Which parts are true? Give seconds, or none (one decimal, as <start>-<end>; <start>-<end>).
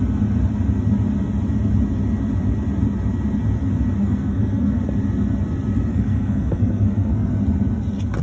0.0-4.0; 4.8-5.9; 7.3-8.2